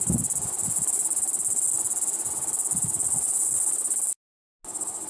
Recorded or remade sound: recorded